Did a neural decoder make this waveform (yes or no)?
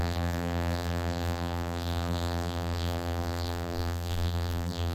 yes